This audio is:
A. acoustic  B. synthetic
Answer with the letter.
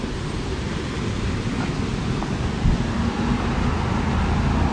A